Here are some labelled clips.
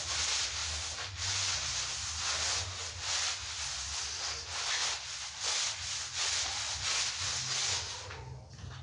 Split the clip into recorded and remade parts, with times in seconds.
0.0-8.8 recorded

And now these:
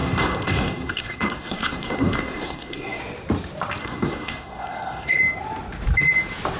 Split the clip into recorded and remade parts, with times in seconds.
0.0-3.0 remade; 3.0-3.8 recorded; 3.8-5.2 remade; 5.2-6.6 recorded

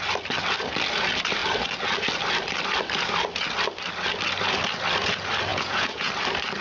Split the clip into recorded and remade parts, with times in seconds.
0.0-5.5 recorded; 5.5-6.1 remade; 6.1-6.6 recorded

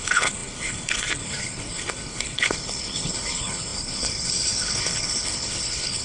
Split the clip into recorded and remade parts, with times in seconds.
0.0-6.0 remade

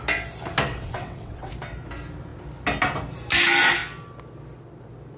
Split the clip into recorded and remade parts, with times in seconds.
0.0-0.7 recorded; 0.7-1.5 remade; 1.5-5.2 recorded

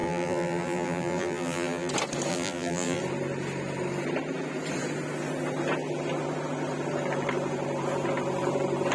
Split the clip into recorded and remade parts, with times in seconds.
0.0-1.9 remade; 1.9-2.3 recorded; 2.3-3.0 remade; 3.0-8.9 recorded